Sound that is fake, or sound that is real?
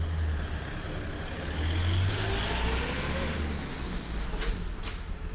real